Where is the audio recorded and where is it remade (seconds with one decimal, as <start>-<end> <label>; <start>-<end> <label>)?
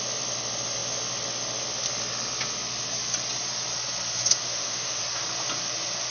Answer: 0.0-4.4 recorded; 4.4-5.0 remade; 5.0-6.1 recorded